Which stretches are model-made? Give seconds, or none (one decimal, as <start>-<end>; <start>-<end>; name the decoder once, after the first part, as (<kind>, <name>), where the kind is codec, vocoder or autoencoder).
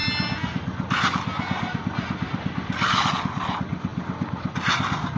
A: none